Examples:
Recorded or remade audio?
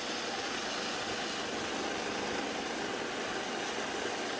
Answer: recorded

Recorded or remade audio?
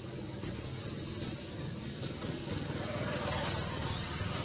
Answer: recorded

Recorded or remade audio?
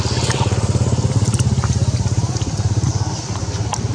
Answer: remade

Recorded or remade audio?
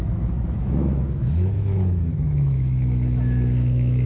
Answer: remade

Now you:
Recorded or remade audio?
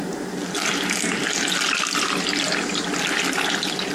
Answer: recorded